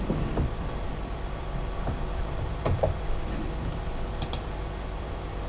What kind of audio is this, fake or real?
fake